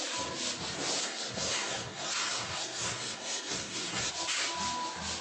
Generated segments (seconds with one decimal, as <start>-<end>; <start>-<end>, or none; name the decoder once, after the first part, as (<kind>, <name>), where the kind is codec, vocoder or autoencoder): 1.0-4.1 (codec, SNAC)